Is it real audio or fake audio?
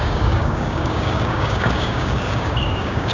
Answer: fake